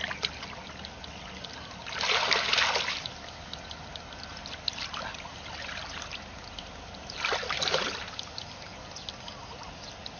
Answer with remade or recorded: recorded